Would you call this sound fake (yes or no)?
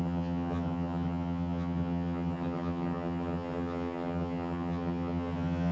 yes